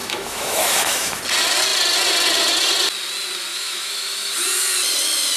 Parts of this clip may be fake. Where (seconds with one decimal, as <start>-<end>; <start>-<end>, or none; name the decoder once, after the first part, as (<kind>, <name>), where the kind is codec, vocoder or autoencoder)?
0.0-1.2 (autoencoder, DAC-VAE); 3.5-4.3